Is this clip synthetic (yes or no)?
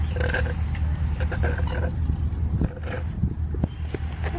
no